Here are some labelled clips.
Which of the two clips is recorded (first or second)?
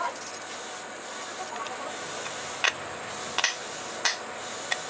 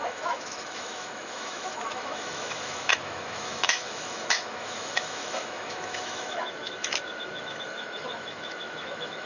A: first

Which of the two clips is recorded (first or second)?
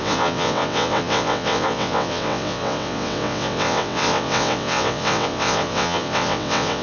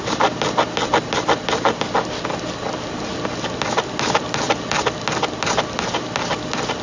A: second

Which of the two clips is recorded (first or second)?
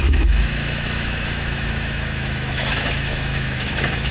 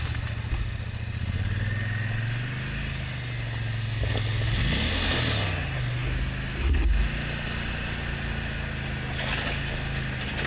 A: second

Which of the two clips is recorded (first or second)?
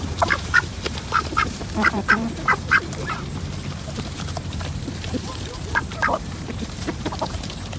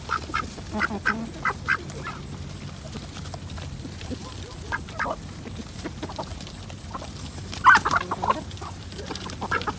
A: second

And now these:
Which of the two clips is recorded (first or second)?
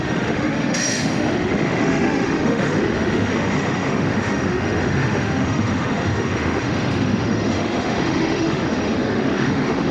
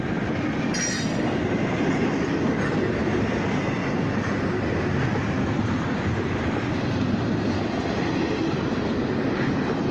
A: second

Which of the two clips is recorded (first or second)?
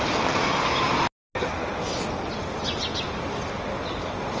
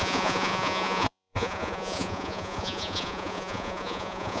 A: first